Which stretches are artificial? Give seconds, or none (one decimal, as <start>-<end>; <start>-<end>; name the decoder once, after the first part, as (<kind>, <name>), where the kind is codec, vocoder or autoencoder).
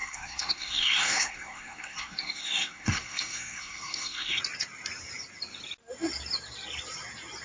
0.0-4.4 (codec, SNAC)